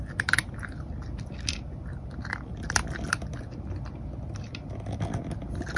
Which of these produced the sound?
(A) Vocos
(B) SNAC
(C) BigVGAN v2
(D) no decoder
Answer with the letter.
D